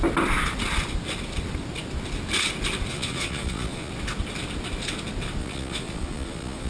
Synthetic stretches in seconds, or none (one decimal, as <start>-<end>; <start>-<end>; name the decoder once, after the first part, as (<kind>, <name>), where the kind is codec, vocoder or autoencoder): 2.9-3.9 (vocoder, Vocos); 5.4-6.7